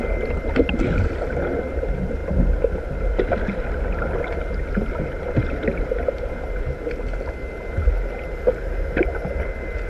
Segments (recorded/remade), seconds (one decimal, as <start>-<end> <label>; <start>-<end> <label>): 0.0-9.9 recorded

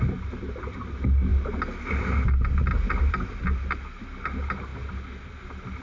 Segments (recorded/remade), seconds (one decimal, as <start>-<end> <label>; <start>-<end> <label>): 0.0-5.8 recorded

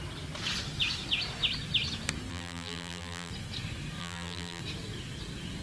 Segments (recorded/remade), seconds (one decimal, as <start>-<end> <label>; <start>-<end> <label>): 0.0-2.3 recorded; 2.3-3.3 remade; 3.3-4.0 recorded; 4.0-4.6 remade; 4.6-5.6 recorded

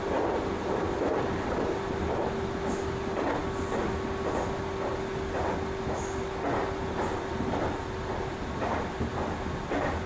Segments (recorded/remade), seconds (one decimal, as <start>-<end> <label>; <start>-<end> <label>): 0.0-10.1 recorded

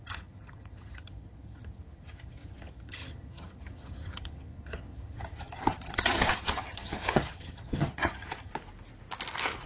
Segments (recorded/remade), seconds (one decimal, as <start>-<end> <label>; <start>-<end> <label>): 0.0-8.5 remade; 8.5-9.7 recorded